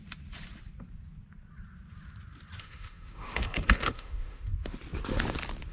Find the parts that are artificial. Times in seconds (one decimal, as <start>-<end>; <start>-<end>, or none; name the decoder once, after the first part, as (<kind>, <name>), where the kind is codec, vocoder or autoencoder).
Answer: 2.6-4.5 (autoencoder, DAC-VAE)